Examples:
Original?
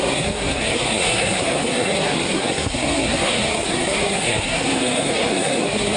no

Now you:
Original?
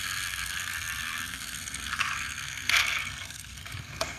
no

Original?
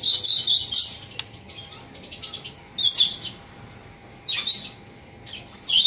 yes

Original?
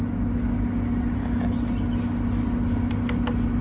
yes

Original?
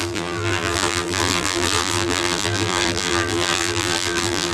no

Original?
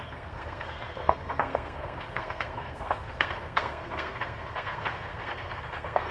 no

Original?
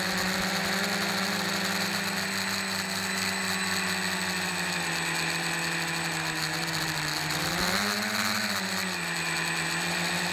yes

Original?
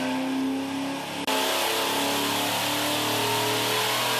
yes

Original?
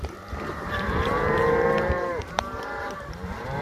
no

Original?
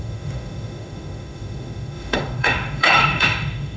no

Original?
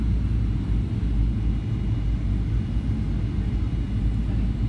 yes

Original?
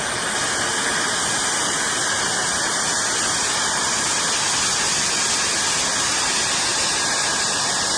yes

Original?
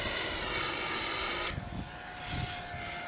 yes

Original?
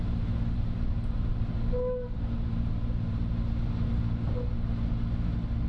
yes